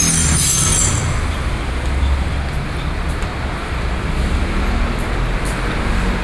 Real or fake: real